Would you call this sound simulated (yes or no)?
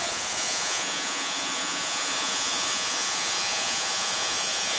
yes